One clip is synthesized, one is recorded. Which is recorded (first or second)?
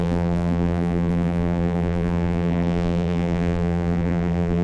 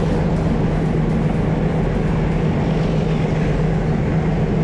second